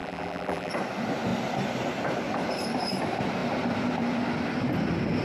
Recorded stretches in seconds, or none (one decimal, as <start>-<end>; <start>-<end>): 0.7-5.2